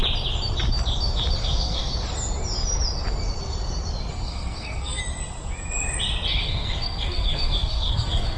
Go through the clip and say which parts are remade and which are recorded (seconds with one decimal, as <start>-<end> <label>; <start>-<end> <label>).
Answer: 0.0-1.4 recorded; 1.4-1.9 remade; 1.9-4.1 recorded; 4.1-5.0 remade; 5.0-6.4 recorded; 6.4-8.4 remade